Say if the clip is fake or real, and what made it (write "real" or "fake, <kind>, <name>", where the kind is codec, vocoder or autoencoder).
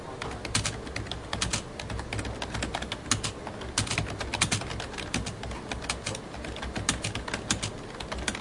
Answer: real